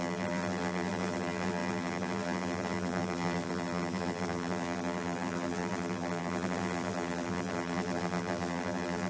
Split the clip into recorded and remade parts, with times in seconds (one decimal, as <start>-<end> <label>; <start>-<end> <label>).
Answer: 0.0-9.1 remade